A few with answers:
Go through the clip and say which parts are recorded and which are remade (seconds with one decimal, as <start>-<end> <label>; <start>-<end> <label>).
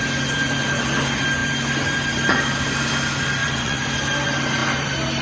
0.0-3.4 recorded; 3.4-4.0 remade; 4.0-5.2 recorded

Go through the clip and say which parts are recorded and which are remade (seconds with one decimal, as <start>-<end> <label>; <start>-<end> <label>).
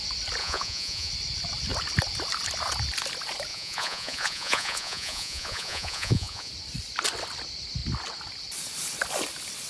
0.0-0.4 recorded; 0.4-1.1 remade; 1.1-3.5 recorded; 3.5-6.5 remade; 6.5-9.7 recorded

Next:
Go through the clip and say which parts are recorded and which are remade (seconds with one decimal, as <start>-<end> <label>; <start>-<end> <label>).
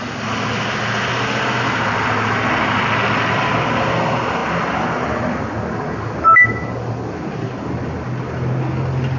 0.0-9.2 recorded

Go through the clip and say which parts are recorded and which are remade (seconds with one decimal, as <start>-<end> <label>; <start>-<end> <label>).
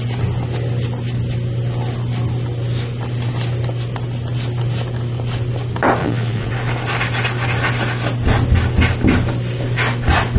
0.0-6.0 recorded; 6.0-6.5 remade; 6.5-10.4 recorded